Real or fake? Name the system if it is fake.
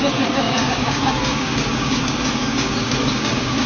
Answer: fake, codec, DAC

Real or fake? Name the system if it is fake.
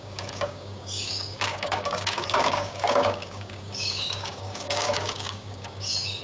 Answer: fake, codec, DAC